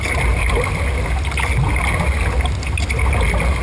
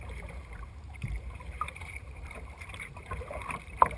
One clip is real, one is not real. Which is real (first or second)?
first